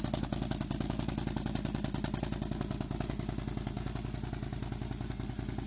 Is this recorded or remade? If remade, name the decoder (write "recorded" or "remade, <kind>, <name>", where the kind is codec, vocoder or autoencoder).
recorded